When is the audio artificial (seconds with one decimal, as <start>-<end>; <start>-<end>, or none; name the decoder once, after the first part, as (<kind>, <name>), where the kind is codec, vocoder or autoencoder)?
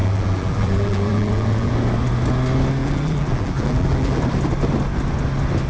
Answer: 0.0-1.7 (vocoder, BigVGAN v2); 2.8-4.2